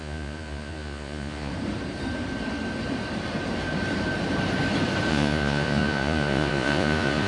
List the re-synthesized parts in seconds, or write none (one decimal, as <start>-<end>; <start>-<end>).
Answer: 0.0-1.5; 5.1-7.3